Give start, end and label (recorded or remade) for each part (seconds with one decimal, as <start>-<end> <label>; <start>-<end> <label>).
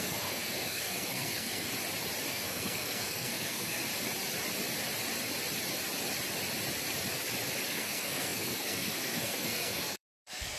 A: 0.0-1.7 remade; 1.7-2.3 recorded; 2.3-3.9 remade; 3.9-7.7 recorded; 7.7-10.6 remade